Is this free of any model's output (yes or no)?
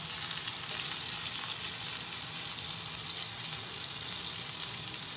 yes